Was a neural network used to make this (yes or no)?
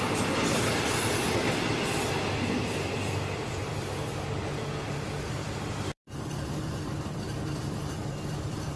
yes